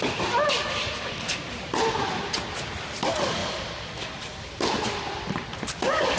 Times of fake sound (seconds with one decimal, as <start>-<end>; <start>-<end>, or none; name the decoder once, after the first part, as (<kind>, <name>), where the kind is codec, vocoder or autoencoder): none